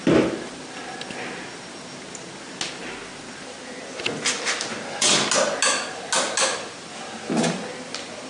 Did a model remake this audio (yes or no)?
no